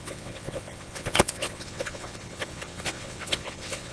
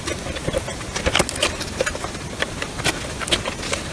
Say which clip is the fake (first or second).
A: first